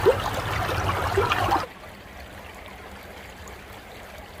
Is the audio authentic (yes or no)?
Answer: yes